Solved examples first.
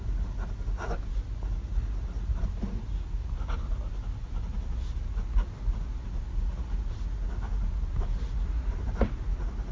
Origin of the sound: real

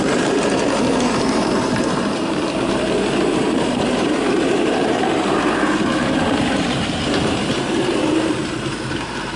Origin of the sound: fake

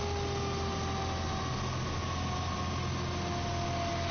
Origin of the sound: real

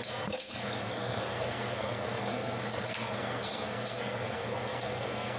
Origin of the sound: fake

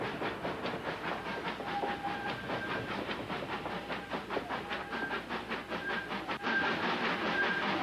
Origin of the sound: real